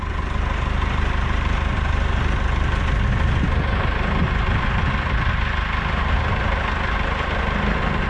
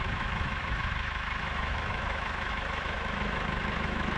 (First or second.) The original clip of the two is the first